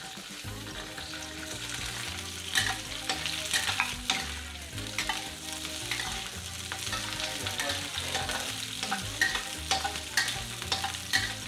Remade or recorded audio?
recorded